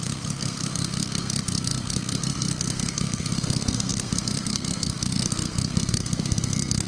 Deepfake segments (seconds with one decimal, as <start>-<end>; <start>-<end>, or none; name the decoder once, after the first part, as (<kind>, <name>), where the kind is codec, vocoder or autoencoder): 0.0-6.9 (codec, SNAC)